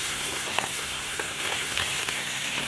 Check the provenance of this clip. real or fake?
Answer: fake